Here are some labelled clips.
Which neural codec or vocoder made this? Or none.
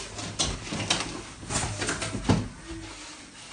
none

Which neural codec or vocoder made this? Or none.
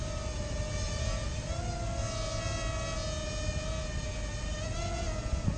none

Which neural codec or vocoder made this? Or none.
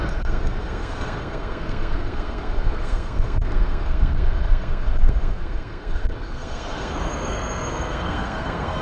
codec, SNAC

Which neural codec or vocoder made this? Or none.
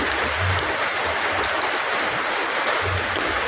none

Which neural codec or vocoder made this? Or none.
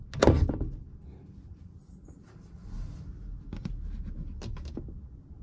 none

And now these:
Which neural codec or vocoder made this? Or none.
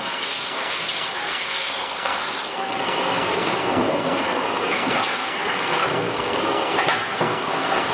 codec, SNAC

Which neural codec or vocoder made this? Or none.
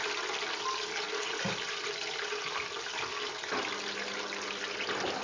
none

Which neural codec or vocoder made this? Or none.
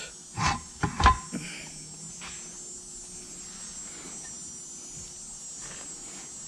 none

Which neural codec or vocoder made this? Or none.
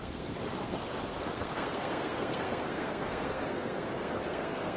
codec, SNAC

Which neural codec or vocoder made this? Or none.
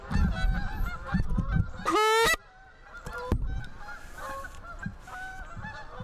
none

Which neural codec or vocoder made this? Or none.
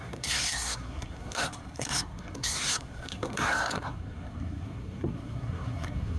codec, SNAC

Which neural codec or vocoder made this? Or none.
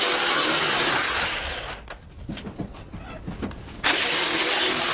none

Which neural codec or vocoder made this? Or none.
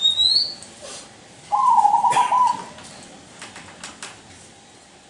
none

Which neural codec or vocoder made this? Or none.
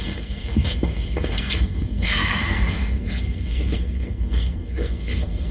codec, SNAC